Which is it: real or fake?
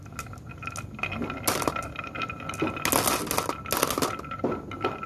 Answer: real